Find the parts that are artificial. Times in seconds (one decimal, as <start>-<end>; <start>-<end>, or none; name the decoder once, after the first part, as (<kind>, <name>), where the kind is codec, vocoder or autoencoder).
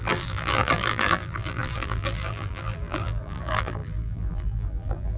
0.0-5.2 (vocoder, BigVGAN v2)